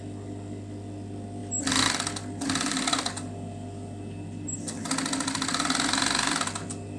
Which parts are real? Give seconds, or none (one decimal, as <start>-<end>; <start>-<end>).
0.0-7.0